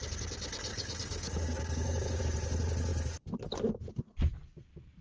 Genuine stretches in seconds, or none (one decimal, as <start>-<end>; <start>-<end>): 0.0-0.7; 2.2-5.0